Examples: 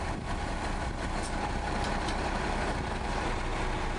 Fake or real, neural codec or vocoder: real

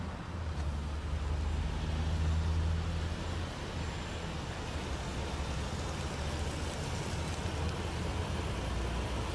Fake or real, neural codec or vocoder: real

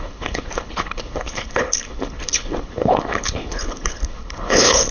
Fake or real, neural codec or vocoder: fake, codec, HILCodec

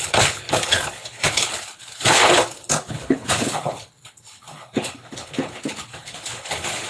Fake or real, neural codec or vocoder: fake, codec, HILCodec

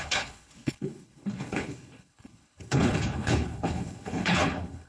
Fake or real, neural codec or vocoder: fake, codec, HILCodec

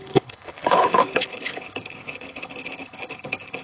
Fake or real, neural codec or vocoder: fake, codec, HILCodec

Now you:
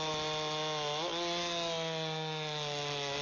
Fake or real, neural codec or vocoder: real